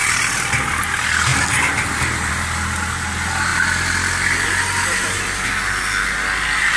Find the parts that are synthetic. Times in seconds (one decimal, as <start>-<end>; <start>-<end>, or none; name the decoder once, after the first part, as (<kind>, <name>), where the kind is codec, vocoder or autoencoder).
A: 0.0-0.7 (vocoder, BigVGAN v2)